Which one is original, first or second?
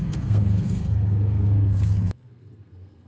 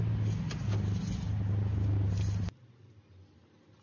second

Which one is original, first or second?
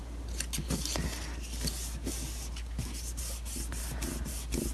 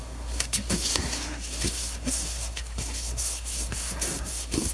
first